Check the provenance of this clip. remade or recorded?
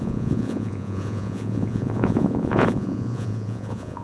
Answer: remade